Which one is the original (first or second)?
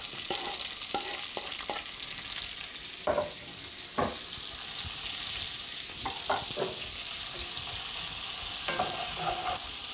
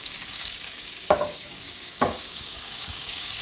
first